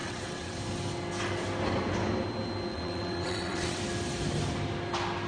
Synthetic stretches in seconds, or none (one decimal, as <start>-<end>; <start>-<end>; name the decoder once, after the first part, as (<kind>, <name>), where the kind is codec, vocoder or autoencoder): 0.0-0.6 (vocoder, WaveNeXt); 2.7-3.8